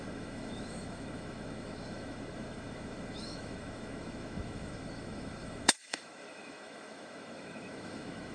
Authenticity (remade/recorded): remade